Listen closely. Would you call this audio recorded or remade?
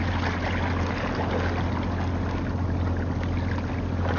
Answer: recorded